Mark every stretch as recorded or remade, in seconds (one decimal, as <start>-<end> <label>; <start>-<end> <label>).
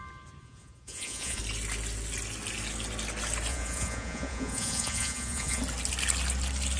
0.0-0.4 recorded; 0.4-1.4 remade; 1.4-3.5 recorded; 3.5-5.6 remade; 5.6-6.8 recorded